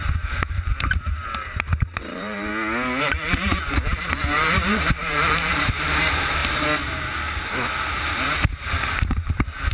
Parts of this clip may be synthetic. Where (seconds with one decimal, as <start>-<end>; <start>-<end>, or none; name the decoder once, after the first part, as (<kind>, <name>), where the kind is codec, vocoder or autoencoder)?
0.0-2.5 (vocoder, BigVGAN v2); 3.0-6.4; 7.9-9.7